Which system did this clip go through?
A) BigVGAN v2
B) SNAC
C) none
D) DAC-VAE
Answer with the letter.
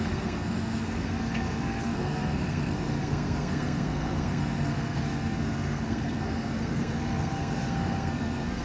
B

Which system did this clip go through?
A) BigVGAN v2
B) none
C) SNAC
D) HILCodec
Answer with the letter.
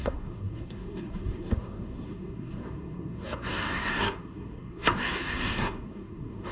C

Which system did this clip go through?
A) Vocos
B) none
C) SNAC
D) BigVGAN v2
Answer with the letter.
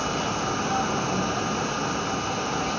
B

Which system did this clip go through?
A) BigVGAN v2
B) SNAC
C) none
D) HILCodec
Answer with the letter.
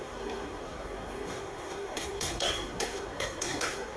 B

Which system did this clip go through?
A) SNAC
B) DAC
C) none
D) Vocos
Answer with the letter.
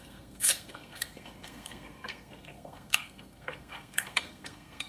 A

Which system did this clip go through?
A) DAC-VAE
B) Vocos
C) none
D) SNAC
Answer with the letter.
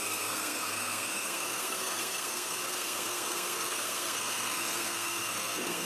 D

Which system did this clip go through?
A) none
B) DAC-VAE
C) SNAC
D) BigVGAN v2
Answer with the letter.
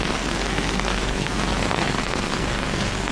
C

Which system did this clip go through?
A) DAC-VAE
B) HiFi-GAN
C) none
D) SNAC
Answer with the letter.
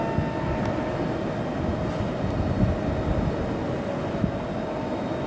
C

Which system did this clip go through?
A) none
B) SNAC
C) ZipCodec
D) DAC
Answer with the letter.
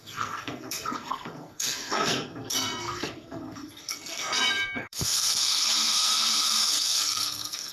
B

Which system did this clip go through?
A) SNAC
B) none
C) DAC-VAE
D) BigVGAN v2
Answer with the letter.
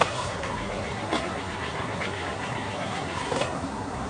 A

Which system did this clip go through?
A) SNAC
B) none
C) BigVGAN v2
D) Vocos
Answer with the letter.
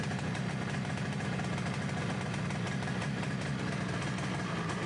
B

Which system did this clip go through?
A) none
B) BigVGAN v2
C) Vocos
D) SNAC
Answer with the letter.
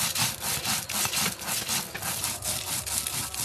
A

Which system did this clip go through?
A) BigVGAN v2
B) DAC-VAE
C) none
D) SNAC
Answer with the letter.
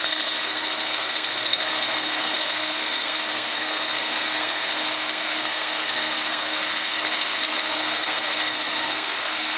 D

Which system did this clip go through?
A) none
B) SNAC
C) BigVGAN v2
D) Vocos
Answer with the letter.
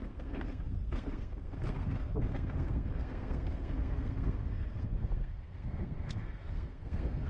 B